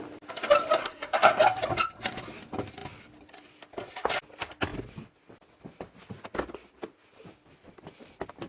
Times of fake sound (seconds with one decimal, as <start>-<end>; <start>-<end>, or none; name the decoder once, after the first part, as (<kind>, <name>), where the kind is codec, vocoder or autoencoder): 0.8-1.4 (codec, SNAC)